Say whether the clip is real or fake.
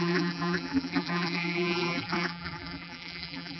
fake